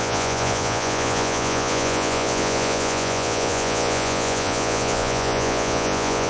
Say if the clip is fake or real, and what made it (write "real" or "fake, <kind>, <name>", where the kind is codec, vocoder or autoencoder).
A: fake, vocoder, Vocos